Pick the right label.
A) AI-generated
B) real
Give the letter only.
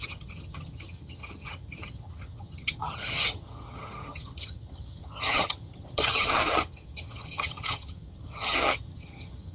A